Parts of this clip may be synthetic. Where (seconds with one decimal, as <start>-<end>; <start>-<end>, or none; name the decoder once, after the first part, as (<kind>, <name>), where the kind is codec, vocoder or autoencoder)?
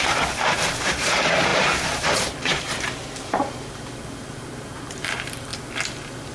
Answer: 0.0-5.5 (vocoder, BigVGAN v2)